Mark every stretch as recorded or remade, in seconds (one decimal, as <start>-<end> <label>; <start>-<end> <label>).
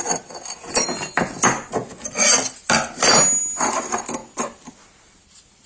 0.0-5.7 recorded